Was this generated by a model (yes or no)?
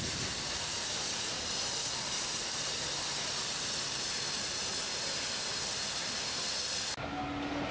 no